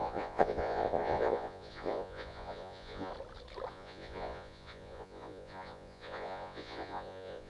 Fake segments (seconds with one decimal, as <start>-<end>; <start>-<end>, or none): 0.0-3.1; 3.7-7.5